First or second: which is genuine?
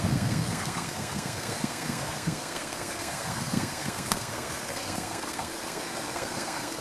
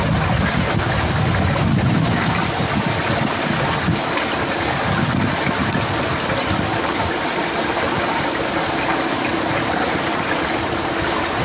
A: second